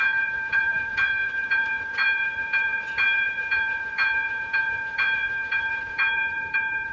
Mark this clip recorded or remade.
remade